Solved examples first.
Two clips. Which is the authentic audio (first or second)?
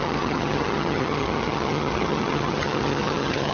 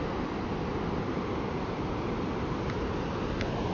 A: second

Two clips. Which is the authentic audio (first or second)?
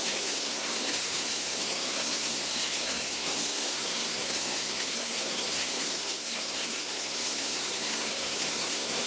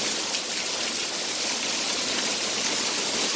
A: second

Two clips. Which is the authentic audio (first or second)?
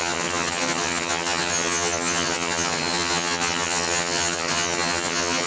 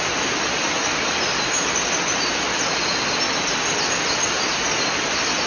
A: second